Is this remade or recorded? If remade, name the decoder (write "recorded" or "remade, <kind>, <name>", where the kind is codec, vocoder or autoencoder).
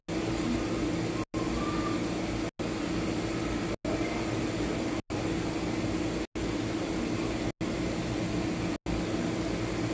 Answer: recorded